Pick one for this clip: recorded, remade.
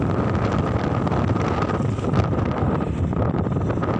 recorded